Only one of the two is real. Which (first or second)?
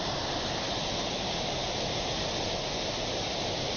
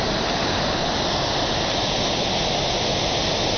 second